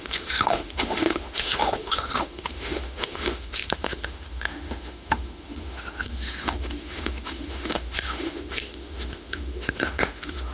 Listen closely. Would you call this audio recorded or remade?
remade